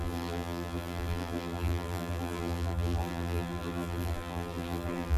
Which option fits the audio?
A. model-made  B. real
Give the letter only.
A